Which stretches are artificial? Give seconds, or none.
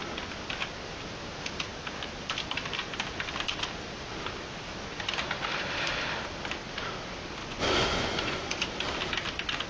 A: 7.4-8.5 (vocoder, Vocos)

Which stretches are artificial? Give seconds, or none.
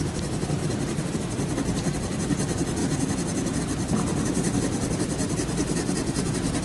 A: 2.8-3.6 (vocoder, Vocos)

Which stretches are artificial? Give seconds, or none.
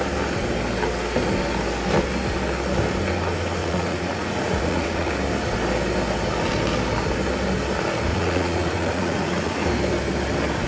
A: 3.6-5.1 (vocoder, Vocos); 8.1-9.7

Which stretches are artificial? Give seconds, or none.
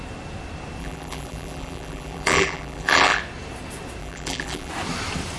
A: 0.8-3.2 (vocoder, BigVGAN v2); 4.0-4.7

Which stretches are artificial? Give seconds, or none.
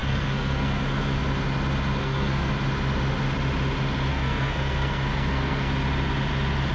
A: 0.0-1.2 (codec, SNAC); 2.0-2.5; 4.1-5.7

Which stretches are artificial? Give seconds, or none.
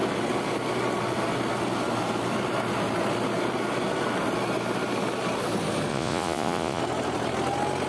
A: 5.9-6.8 (vocoder, Vocos)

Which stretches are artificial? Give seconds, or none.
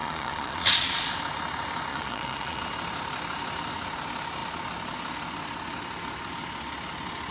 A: 0.0-1.1 (vocoder, Vocos); 1.9-2.6